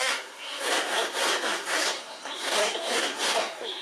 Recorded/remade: remade